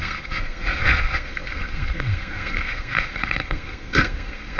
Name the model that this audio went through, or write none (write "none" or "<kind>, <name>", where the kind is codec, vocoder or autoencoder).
codec, SNAC